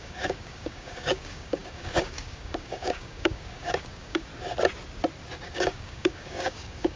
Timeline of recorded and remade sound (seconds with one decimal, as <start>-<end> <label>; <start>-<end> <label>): 0.0-4.3 remade; 4.3-5.4 recorded; 5.4-7.0 remade